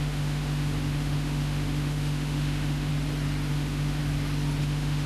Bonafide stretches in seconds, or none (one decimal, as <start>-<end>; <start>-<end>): 2.9-3.5; 4.0-4.6